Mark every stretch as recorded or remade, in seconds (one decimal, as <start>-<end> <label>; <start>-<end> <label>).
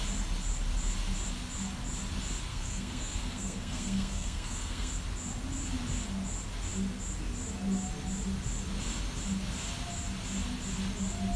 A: 0.0-2.5 recorded; 2.5-4.9 remade; 4.9-11.4 recorded